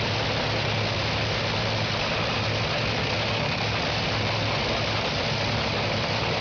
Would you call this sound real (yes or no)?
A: yes